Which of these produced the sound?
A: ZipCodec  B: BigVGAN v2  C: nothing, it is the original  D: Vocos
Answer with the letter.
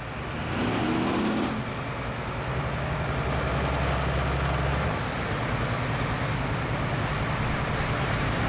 C